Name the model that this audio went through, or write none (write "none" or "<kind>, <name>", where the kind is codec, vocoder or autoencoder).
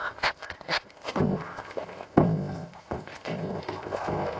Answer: codec, ZipCodec